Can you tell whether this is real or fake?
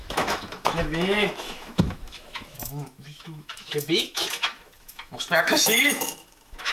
fake